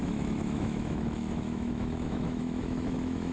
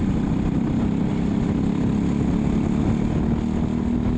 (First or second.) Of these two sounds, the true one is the second